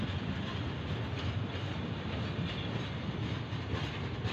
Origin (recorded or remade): recorded